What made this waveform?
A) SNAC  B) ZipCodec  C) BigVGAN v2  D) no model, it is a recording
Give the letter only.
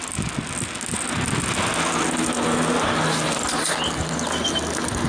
D